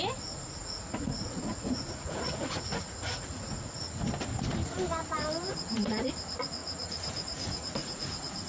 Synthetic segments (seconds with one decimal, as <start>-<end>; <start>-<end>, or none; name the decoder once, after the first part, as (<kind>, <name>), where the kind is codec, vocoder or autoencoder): 0.6-3.8 (vocoder, Vocos); 5.5-6.1; 6.6-8.5